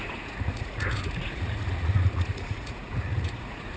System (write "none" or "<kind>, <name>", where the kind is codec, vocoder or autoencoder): vocoder, Vocos